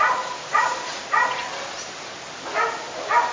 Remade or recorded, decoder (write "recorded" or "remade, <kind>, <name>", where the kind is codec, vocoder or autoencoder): recorded